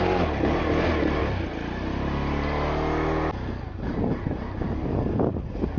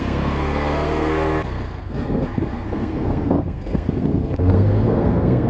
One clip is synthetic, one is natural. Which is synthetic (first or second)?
second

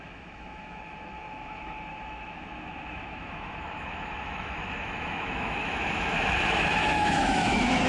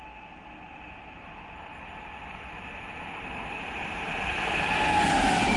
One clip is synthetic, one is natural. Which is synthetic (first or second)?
first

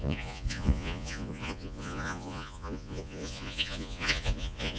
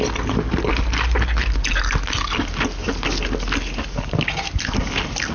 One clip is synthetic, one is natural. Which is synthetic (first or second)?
first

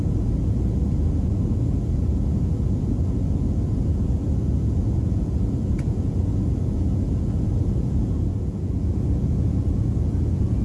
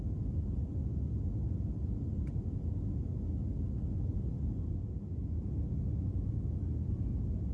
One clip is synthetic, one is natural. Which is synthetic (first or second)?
first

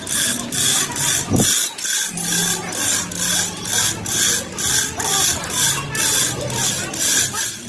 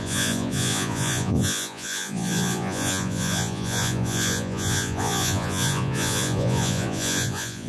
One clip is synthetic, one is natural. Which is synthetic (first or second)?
second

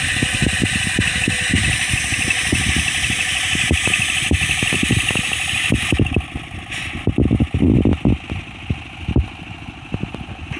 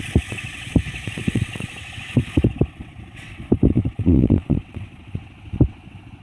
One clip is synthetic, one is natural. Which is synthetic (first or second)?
second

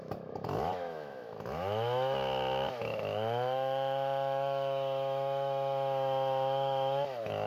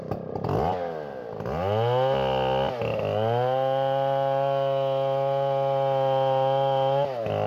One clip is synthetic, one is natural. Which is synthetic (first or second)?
first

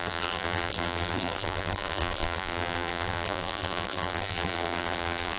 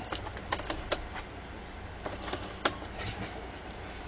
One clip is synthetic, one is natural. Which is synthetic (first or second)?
first